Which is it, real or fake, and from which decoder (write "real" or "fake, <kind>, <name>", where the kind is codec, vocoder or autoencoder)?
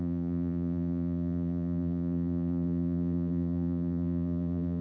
fake, vocoder, BigVGAN v2